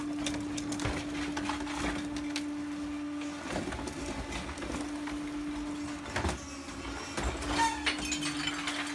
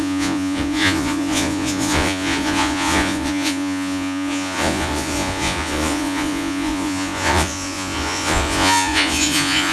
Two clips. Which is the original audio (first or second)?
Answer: first